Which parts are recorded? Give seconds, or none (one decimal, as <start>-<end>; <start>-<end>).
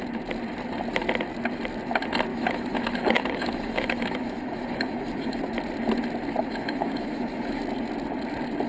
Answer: 0.0-2.3; 5.4-6.4; 7.6-8.7